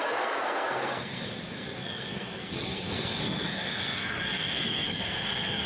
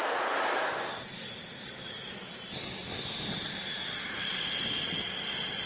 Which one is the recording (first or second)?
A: second